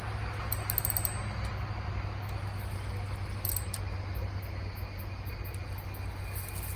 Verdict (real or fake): real